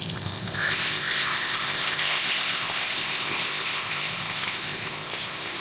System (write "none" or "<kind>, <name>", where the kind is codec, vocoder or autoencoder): codec, ZipCodec